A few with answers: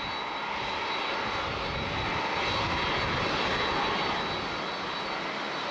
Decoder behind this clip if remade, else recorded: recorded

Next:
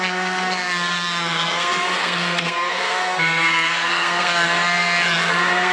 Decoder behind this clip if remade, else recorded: remade, codec, SNAC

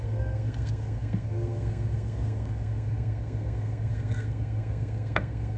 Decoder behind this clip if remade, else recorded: remade, codec, SNAC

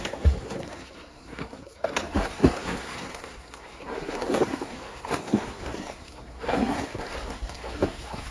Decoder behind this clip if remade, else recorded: remade, codec, SNAC